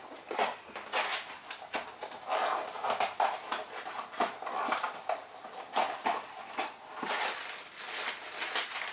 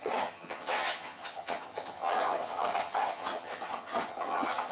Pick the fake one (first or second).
second